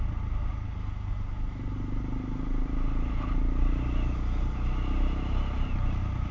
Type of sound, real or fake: real